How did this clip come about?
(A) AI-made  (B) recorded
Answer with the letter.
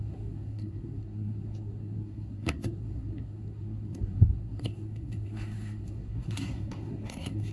A